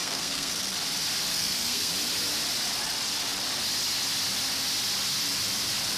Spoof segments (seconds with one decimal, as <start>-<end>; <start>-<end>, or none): 0.0-0.5; 1.3-1.9